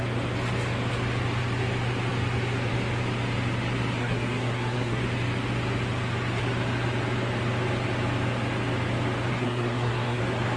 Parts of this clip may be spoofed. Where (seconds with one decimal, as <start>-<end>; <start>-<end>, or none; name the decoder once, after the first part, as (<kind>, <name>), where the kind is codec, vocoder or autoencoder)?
4.0-5.0 (codec, SNAC); 9.3-10.2